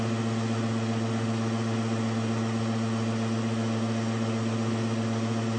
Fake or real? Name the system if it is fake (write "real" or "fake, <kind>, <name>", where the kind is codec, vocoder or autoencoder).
real